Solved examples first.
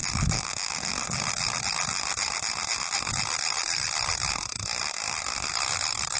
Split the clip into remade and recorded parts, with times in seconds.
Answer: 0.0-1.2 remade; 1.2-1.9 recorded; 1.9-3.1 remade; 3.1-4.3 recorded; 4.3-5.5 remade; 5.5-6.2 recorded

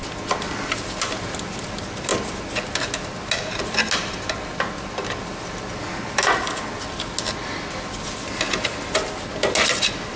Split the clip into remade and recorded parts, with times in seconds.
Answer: 0.0-10.2 recorded

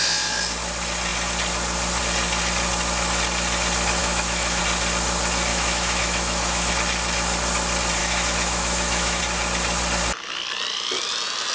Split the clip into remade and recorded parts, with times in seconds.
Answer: 0.0-4.0 recorded; 4.0-4.6 remade; 4.6-5.5 recorded; 5.5-6.7 remade; 6.7-8.0 recorded; 8.0-9.2 remade; 9.2-11.5 recorded

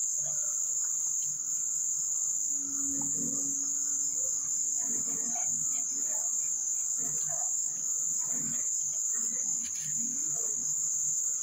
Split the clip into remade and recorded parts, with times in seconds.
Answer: 0.0-11.4 recorded

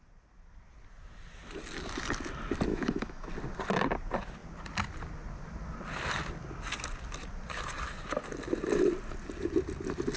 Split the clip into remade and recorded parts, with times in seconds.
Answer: 0.0-2.7 recorded; 2.7-3.3 remade; 3.3-10.2 recorded